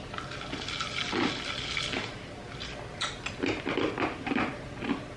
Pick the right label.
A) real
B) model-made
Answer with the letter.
A